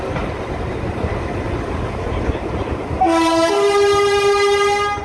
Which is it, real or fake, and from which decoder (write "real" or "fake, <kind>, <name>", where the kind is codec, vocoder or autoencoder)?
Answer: real